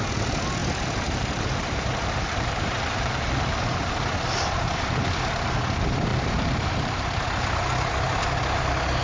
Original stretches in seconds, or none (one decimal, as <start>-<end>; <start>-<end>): 0.0-0.6; 3.9-6.1; 7.3-9.0